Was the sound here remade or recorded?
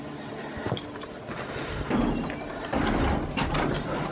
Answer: recorded